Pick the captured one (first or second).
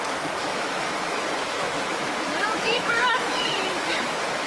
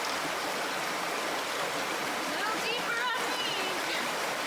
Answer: second